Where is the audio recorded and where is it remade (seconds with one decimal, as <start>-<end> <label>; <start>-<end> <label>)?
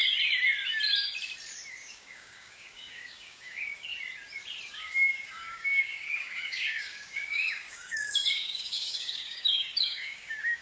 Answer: 0.0-1.7 recorded; 1.7-3.9 remade; 3.9-4.7 recorded; 4.7-10.6 remade